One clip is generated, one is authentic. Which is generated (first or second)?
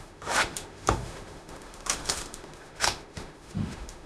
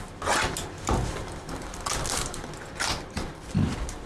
first